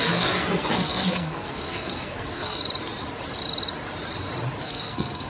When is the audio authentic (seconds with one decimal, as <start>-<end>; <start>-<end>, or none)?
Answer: 2.6-4.6